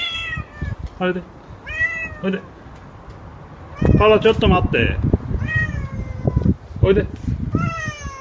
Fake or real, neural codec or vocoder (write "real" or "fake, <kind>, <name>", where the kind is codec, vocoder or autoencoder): real